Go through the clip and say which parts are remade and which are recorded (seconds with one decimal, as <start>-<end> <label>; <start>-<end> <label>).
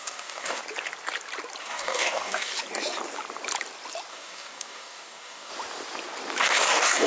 0.0-0.6 remade; 0.6-1.6 recorded; 1.6-2.5 remade; 2.5-4.1 recorded; 4.1-5.5 remade; 5.5-6.4 recorded; 6.4-7.1 remade